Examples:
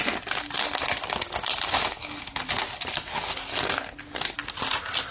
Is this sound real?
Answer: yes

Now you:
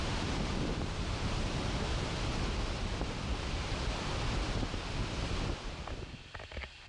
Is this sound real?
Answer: yes